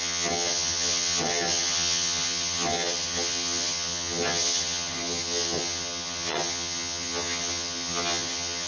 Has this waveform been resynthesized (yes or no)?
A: yes